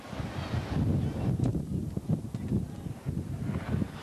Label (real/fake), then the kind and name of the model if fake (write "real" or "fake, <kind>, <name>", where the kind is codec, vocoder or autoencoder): real